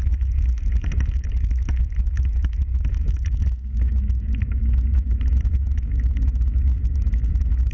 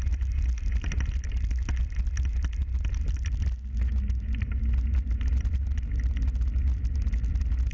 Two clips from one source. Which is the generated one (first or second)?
first